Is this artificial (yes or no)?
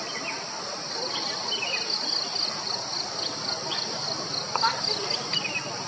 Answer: no